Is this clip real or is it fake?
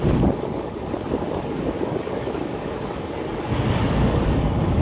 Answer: fake